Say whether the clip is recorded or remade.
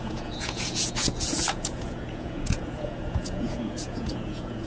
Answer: remade